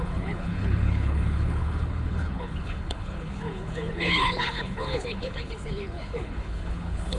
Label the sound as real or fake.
fake